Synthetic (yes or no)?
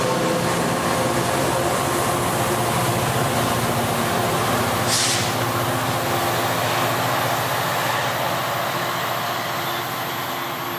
no